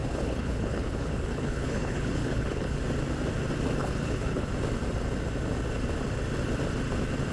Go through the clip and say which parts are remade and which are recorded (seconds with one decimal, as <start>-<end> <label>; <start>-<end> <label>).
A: 0.0-2.8 remade; 2.8-3.8 recorded; 3.8-4.5 remade; 4.5-7.3 recorded

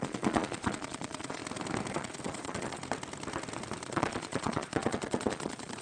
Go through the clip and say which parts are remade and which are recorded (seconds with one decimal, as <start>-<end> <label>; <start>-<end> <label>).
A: 0.0-1.4 remade; 1.4-1.9 recorded; 1.9-2.8 remade; 2.8-3.8 recorded; 3.8-5.8 remade

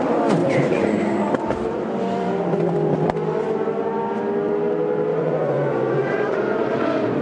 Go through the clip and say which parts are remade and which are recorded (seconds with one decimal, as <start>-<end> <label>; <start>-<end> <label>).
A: 0.0-0.4 recorded; 0.4-1.0 remade; 1.0-5.1 recorded; 5.1-6.7 remade; 6.7-7.2 recorded

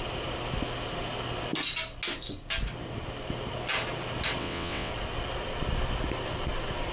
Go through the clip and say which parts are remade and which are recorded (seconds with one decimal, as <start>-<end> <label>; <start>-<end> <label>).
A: 0.0-4.4 recorded; 4.4-4.9 remade; 4.9-6.9 recorded

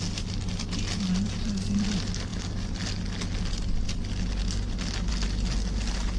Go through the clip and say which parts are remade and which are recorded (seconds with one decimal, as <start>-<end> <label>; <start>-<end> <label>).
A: 0.0-6.2 recorded

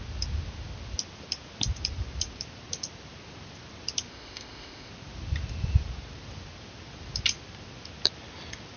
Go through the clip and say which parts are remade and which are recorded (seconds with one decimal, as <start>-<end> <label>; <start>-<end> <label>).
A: 0.0-4.1 recorded; 4.1-4.9 remade; 4.9-8.8 recorded